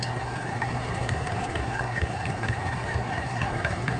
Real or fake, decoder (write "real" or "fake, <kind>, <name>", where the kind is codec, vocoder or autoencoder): fake, codec, SNAC